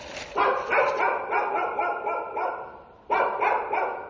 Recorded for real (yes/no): yes